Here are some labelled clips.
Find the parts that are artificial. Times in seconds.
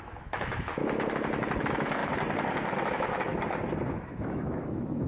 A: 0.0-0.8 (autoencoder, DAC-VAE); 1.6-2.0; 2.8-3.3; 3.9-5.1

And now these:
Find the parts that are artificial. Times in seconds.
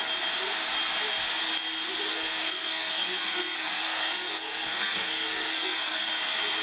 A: 2.1-6.1 (codec, SNAC)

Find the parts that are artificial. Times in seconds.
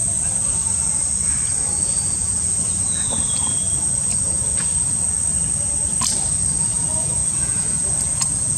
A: 1.8-4.7 (vocoder, Vocos); 6.6-8.6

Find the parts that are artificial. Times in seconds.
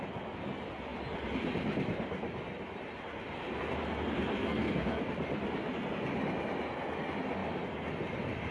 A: 4.4-5.0 (codec, SNAC)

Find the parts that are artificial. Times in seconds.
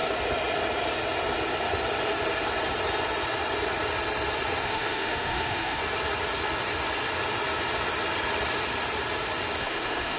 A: 4.6-5.8 (autoencoder, DAC-VAE); 9.6-10.2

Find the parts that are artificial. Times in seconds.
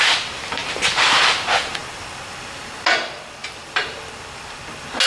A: 3.4-4.1 (vocoder, BigVGAN v2)